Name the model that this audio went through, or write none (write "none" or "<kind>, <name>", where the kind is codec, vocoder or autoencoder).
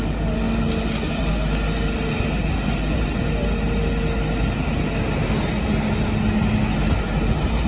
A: none